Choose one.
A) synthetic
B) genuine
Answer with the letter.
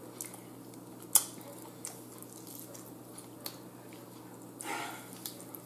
B